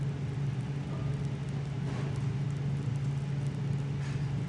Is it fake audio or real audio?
real